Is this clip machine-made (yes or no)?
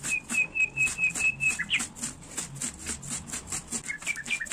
no